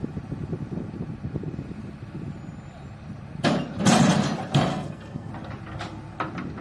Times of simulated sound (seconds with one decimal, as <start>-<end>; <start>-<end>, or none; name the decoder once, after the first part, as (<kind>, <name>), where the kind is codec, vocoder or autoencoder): 4.7-5.3 (codec, SNAC)